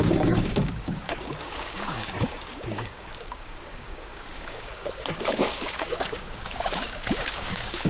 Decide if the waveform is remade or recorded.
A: remade